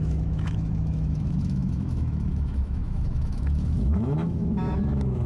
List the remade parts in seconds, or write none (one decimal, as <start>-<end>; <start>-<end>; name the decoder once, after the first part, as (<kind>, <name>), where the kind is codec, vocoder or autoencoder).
0.0-5.3 (autoencoder, DAC-VAE)